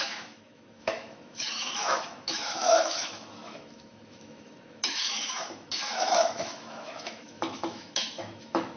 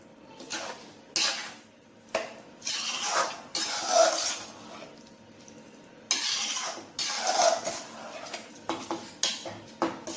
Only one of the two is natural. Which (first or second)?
second